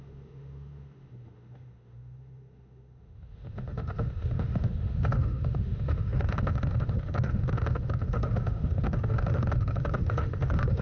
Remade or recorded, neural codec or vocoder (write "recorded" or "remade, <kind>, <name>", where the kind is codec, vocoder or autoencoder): remade, autoencoder, DAC-VAE